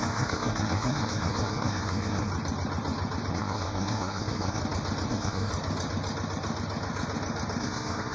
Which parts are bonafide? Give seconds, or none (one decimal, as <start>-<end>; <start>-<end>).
2.3-3.3; 4.6-5.1; 5.5-7.6